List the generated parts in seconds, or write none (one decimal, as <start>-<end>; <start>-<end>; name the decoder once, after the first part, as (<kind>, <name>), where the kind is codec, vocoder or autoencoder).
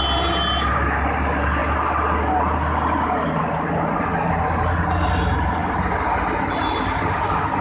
none